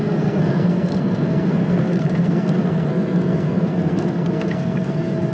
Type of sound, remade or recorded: remade